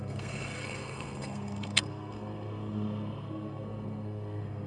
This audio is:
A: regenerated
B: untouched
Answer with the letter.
A